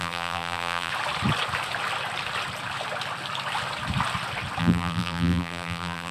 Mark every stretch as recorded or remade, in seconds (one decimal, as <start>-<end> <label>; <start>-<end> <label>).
0.0-0.9 remade; 0.9-4.6 recorded; 4.6-6.1 remade